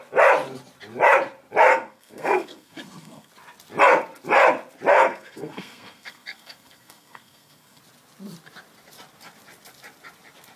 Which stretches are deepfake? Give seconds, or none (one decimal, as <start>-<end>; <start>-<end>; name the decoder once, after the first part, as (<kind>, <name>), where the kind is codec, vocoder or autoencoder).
1.7-3.3 (codec, SNAC); 4.9-7.8